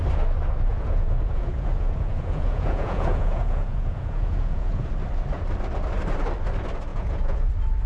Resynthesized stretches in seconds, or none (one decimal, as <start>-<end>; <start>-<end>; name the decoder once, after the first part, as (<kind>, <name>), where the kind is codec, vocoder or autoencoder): 0.7-4.9 (vocoder, Vocos); 6.9-7.5